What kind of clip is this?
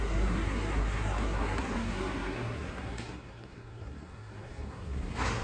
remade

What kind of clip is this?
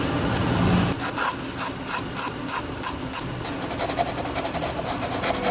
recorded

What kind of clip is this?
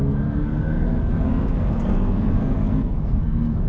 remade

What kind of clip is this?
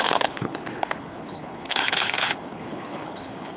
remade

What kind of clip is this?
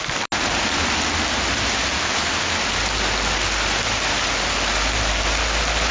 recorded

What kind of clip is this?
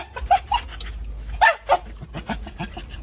recorded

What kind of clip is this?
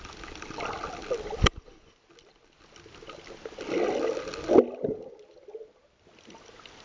recorded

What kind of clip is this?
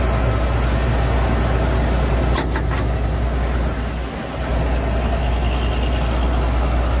recorded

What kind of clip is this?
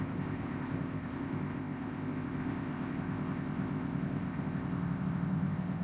remade